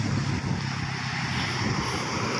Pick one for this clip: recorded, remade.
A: recorded